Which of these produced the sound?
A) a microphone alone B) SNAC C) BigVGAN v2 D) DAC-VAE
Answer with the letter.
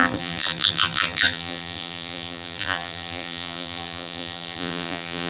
C